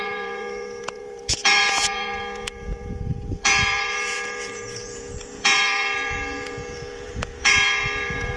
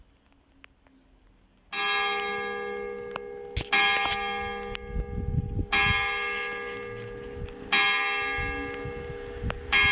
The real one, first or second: second